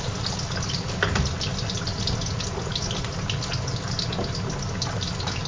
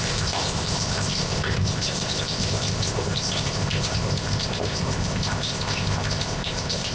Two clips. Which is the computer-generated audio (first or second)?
second